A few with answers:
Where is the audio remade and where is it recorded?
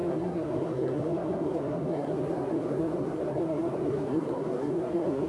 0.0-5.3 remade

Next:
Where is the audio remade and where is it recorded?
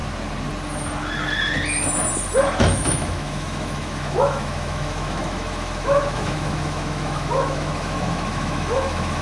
0.0-2.6 recorded; 2.6-9.2 remade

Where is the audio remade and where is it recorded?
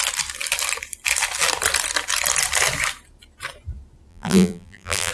0.0-4.1 recorded; 4.1-5.1 remade